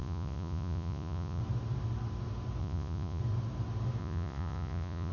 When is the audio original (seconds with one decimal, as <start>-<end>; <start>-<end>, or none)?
1.4-2.6; 3.2-4.0